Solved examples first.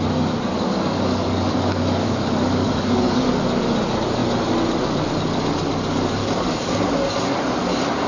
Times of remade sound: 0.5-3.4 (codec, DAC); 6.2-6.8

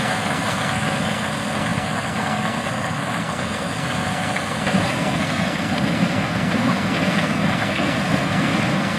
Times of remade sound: 0.0-9.0 (codec, SNAC)

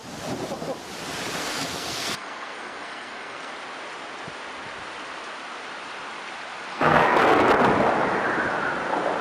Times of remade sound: 1.4-3.5 (codec, SNAC); 6.7-7.5

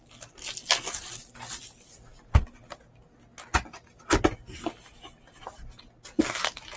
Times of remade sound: none

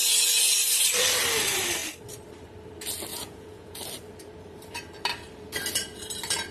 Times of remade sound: 3.1-3.8 (vocoder, Vocos)

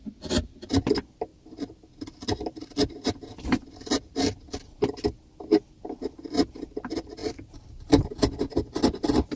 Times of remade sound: none

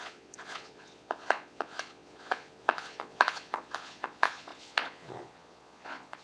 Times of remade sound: 0.0-6.2 (vocoder, Vocos)

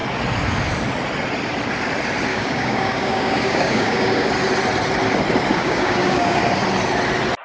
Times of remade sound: 2.3-4.3 (codec, DAC); 5.5-6.4